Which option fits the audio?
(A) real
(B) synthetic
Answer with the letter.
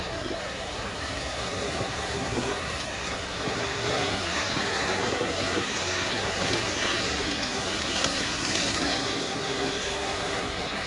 B